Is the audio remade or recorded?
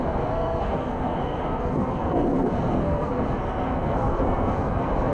remade